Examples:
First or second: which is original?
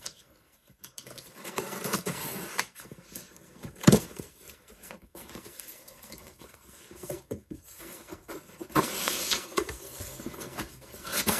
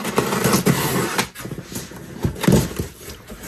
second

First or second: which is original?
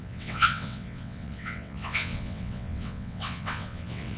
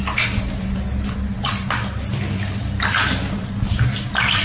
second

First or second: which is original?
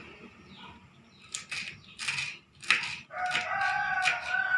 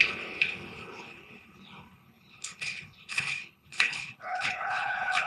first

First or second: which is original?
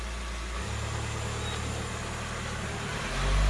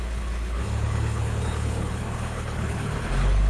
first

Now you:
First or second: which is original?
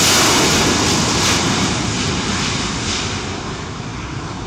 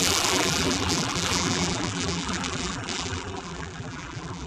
first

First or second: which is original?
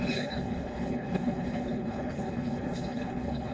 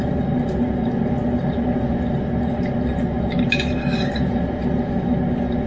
second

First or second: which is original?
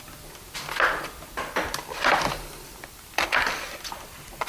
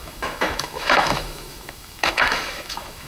first